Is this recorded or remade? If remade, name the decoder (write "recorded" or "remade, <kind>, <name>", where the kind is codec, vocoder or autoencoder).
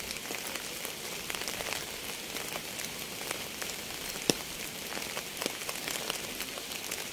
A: remade, vocoder, BigVGAN v2